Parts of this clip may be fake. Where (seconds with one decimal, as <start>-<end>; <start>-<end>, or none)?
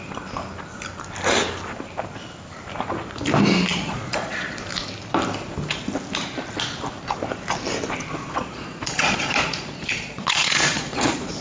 3.7-4.6; 8.2-11.4